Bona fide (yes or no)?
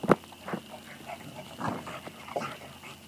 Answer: yes